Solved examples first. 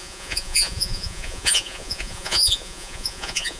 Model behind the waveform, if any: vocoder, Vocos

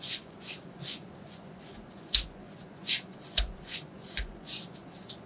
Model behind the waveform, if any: vocoder, Vocos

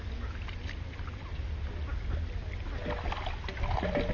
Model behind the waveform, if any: none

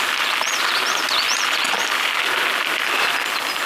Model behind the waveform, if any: none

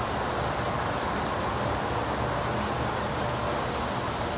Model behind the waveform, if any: none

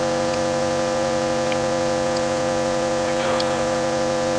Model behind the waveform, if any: vocoder, Vocos